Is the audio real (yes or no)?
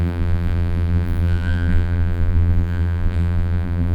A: no